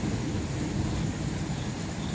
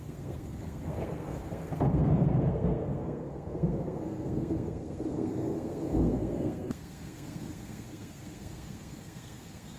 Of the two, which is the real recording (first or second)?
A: first